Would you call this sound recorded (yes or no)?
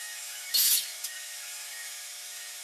no